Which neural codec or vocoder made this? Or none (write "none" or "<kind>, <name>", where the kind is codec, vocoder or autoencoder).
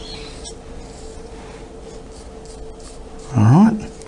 none